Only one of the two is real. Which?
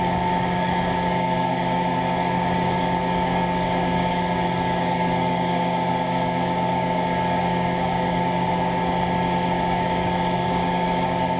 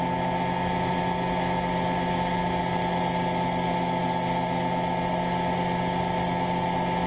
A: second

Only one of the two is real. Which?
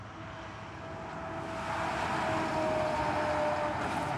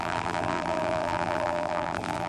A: first